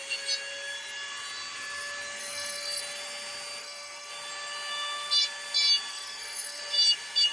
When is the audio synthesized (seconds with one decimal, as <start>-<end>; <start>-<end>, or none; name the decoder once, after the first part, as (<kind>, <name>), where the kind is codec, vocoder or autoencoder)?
2.2-2.8 (codec, SNAC); 3.6-4.1; 5.9-6.6